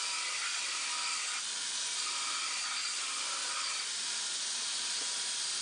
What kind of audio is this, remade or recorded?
recorded